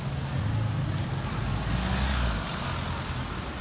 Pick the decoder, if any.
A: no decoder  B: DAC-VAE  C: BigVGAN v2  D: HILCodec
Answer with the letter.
A